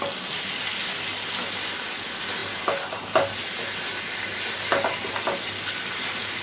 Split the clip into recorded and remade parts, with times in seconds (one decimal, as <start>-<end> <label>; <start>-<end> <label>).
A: 0.0-6.4 recorded